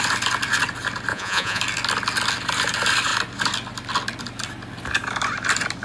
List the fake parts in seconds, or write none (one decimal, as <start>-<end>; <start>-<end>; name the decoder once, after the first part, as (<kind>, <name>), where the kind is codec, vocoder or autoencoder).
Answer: 1.1-1.6 (vocoder, Vocos)